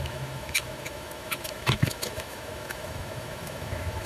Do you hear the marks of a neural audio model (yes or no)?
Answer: yes